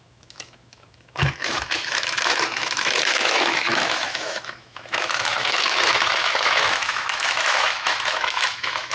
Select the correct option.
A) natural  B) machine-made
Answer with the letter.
B